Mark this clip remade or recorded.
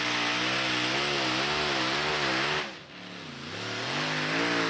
recorded